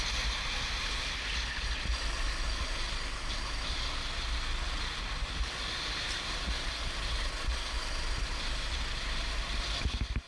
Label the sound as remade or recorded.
recorded